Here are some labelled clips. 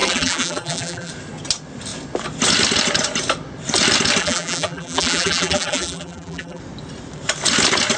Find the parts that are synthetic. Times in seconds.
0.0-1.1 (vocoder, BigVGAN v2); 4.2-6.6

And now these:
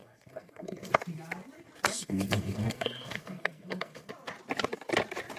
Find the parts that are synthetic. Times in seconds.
0.0-0.9 (codec, SNAC); 1.9-4.1

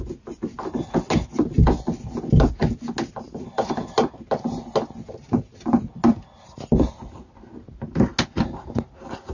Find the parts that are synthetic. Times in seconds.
none

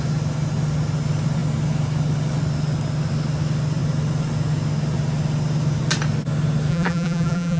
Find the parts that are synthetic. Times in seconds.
6.7-7.6 (vocoder, BigVGAN v2)

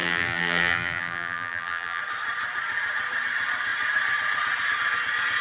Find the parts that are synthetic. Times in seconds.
0.0-2.0 (vocoder, BigVGAN v2)